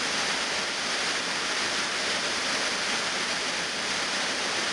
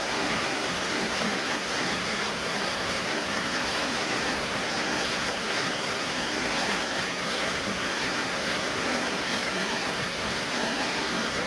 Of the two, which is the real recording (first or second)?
first